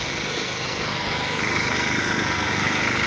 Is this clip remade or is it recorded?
remade